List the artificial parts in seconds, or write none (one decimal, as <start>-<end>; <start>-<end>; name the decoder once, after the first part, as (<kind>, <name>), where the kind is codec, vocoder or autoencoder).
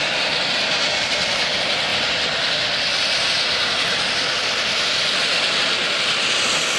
1.9-5.1 (vocoder, BigVGAN v2)